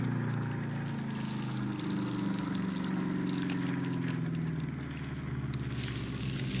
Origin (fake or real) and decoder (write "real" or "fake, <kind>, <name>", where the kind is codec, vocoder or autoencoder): real